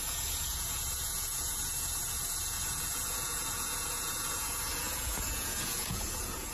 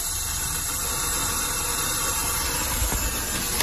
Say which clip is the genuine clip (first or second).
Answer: second